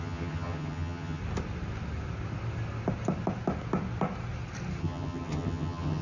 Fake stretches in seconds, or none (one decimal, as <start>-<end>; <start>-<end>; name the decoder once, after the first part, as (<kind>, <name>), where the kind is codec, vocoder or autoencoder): 0.0-1.2 (vocoder, HiFi-GAN); 4.8-6.0